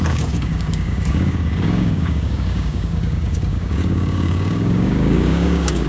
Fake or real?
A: fake